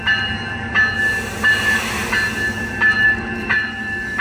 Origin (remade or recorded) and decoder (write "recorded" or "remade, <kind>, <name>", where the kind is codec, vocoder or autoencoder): recorded